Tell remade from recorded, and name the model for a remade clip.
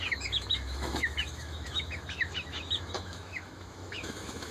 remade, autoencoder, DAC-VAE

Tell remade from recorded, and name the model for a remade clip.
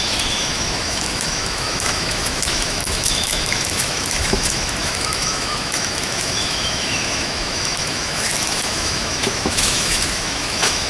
remade, autoencoder, DAC-VAE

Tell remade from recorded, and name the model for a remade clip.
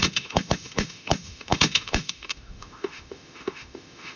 remade, autoencoder, DAC-VAE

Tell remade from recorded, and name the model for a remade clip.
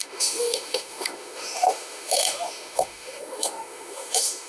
remade, autoencoder, DAC-VAE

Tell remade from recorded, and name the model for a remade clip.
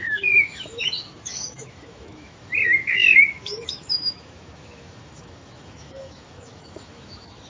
remade, autoencoder, DAC-VAE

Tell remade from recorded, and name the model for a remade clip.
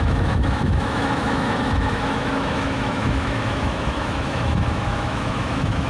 remade, autoencoder, DAC-VAE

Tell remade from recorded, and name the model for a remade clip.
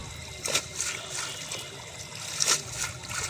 recorded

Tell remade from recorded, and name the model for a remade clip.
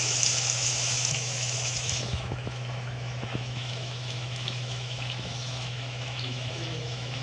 remade, autoencoder, DAC-VAE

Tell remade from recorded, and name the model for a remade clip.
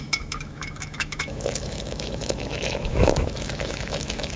remade, autoencoder, DAC-VAE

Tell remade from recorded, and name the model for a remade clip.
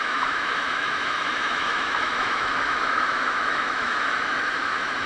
remade, autoencoder, DAC-VAE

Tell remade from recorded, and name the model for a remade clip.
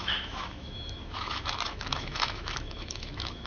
remade, autoencoder, DAC-VAE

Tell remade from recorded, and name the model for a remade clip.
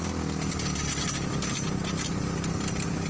recorded